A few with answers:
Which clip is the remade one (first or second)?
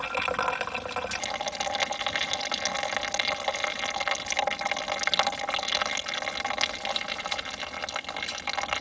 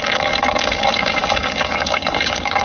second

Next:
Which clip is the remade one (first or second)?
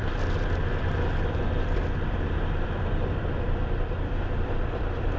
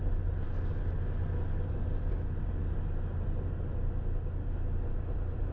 first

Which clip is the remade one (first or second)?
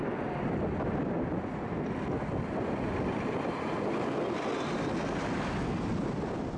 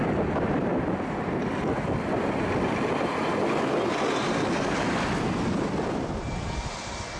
second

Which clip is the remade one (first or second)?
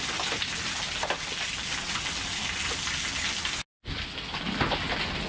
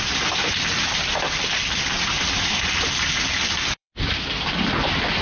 second